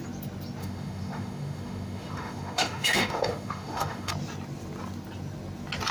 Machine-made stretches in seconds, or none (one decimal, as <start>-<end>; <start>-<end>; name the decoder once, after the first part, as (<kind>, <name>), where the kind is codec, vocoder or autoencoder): 0.6-4.1 (autoencoder, DAC-VAE)